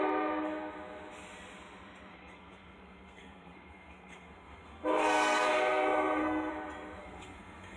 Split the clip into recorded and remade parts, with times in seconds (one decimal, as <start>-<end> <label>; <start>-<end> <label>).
0.0-2.1 recorded; 2.1-6.5 remade; 6.5-7.0 recorded; 7.0-7.8 remade